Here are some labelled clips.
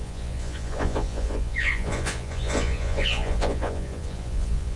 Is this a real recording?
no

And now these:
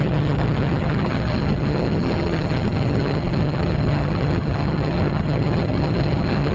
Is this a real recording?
no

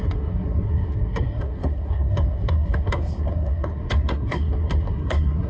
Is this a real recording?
no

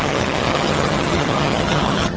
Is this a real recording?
no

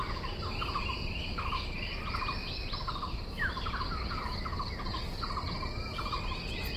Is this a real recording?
yes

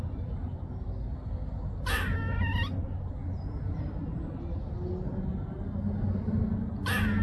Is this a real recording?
yes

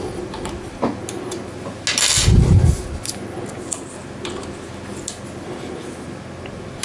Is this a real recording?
yes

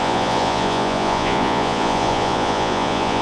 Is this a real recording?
no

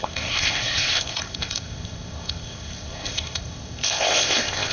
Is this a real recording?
no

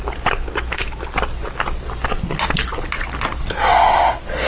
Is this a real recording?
yes